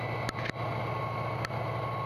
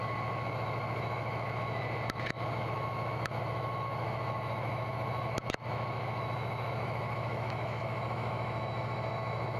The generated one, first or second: second